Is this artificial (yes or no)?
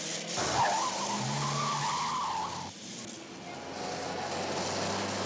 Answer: no